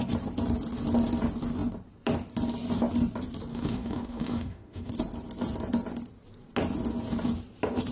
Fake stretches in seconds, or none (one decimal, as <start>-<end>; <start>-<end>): 3.5-4.9